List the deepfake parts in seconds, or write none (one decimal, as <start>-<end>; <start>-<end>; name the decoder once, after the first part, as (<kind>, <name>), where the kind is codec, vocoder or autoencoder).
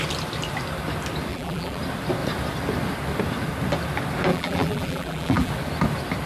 1.3-1.8 (vocoder, BigVGAN v2); 4.3-5.5